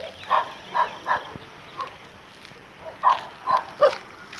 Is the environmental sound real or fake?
real